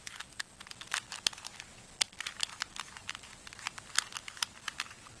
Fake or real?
real